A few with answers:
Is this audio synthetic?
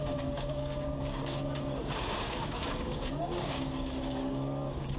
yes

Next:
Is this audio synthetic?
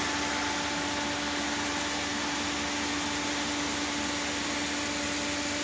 no